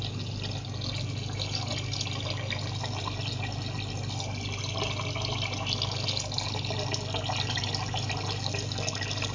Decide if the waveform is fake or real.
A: real